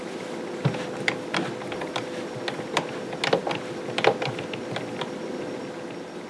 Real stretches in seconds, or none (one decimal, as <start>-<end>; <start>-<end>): 0.0-6.3